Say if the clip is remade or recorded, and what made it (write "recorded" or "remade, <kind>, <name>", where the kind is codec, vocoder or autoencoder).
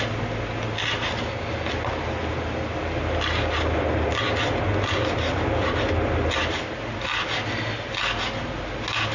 recorded